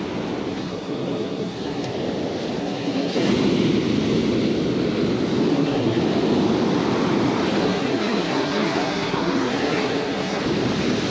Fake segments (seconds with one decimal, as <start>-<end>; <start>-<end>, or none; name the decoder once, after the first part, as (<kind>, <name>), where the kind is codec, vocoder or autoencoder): 0.5-1.9 (codec, SNAC); 2.6-3.3; 5.5-6.0; 7.6-10.4